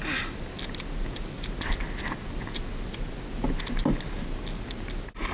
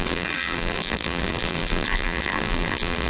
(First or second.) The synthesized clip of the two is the second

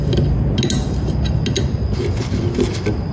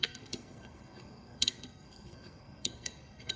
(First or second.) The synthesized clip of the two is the second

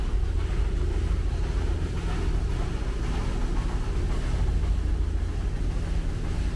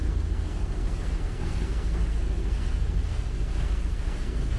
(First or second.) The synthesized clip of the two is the second